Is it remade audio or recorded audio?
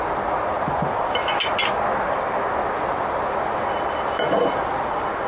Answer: recorded